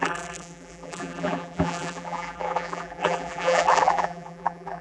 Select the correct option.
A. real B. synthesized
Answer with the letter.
B